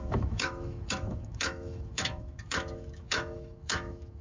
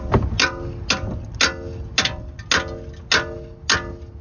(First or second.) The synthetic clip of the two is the first